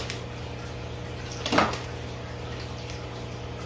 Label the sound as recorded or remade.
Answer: recorded